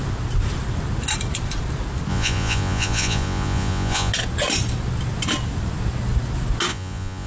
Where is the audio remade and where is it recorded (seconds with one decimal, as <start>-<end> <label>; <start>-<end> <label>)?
0.0-2.1 recorded; 2.1-4.1 remade; 4.1-6.7 recorded; 6.7-7.3 remade